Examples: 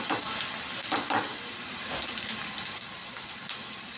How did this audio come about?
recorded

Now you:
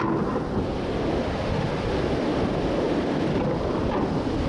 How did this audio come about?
recorded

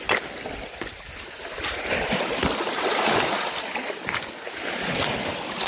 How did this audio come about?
recorded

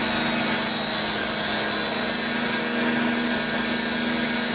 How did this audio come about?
recorded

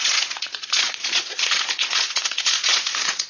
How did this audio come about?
remade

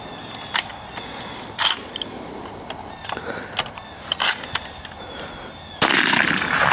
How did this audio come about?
recorded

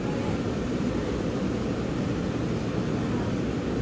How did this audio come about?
recorded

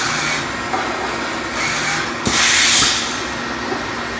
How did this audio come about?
recorded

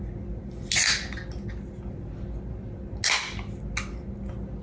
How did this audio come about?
recorded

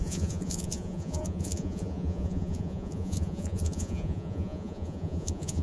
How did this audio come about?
remade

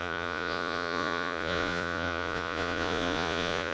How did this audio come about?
remade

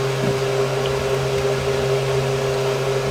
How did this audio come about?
recorded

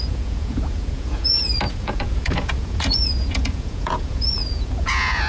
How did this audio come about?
remade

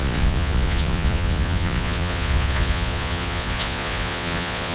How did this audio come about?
remade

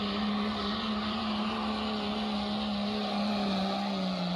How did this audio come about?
recorded